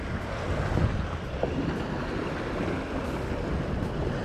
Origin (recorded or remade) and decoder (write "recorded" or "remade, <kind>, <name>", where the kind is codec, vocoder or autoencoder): recorded